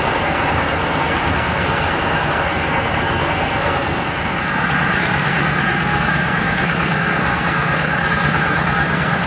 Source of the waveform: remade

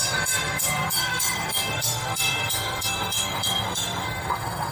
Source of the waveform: remade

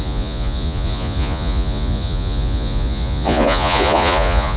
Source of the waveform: remade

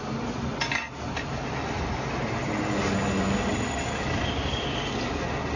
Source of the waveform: recorded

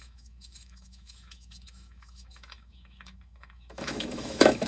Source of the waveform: remade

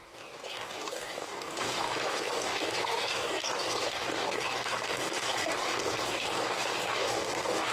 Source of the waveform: remade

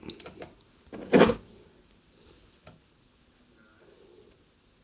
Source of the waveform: recorded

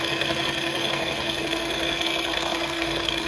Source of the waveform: remade